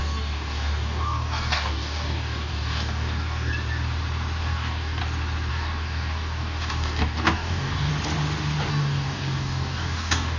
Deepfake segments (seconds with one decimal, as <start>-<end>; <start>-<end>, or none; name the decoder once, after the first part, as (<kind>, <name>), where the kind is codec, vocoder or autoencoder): 0.0-3.5 (codec, DAC); 4.4-5.0; 5.5-7.9; 8.7-10.4